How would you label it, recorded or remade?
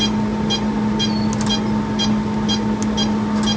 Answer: recorded